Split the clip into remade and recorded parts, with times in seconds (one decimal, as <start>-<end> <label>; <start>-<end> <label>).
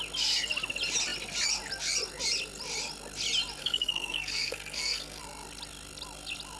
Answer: 0.0-3.6 recorded; 3.6-5.2 remade; 5.2-6.6 recorded